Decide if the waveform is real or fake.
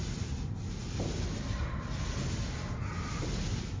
real